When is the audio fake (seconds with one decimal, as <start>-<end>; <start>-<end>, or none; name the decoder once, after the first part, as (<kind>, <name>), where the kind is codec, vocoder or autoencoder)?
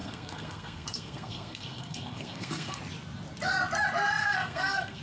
0.0-2.8 (codec, SNAC); 4.2-5.0